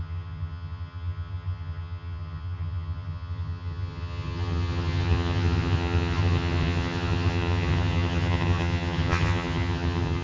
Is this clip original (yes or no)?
no